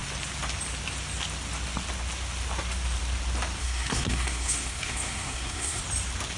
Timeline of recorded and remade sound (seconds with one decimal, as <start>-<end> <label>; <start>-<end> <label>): 0.0-3.6 recorded; 3.6-5.8 remade; 5.8-6.4 recorded